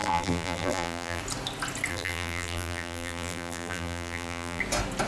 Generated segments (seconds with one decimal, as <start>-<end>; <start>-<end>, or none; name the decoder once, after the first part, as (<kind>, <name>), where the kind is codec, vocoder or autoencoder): 0.0-1.2 (vocoder, BigVGAN v2); 1.9-4.6